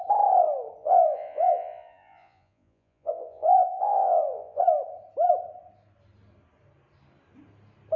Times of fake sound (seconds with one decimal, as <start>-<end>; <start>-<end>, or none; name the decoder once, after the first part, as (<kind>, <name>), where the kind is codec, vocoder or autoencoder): 0.8-4.6 (vocoder, Vocos)